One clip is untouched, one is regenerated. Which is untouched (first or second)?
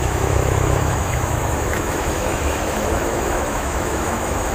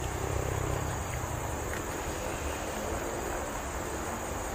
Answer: second